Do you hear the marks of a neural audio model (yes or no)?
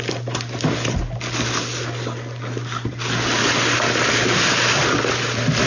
no